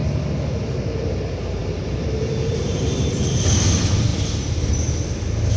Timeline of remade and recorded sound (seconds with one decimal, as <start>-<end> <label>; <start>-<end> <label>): 0.0-1.6 recorded; 1.6-3.2 remade; 3.2-4.1 recorded; 4.1-4.8 remade; 4.8-5.6 recorded